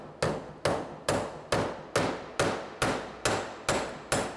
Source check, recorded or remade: recorded